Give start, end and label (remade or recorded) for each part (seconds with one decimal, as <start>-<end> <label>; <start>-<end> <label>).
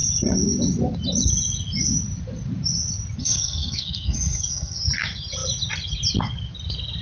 0.0-3.2 recorded; 3.2-4.8 remade; 4.8-7.0 recorded